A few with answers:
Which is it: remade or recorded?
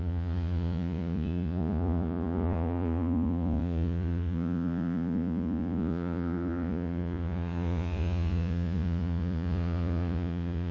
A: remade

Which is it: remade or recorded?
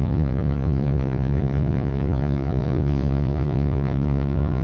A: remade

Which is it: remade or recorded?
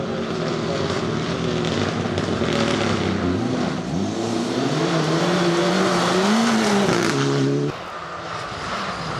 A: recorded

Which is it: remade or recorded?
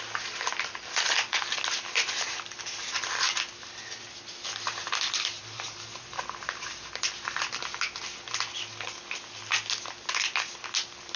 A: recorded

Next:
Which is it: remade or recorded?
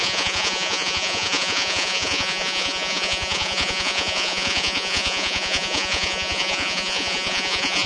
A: remade